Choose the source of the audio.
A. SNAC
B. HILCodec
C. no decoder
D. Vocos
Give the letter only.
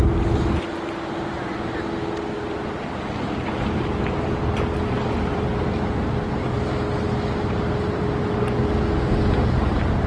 C